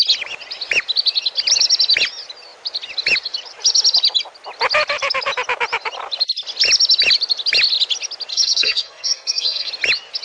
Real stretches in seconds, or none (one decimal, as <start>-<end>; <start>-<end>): 0.0-8.3; 9.7-10.2